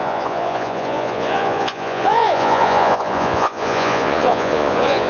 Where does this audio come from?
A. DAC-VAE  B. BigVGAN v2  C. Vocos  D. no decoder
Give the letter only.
C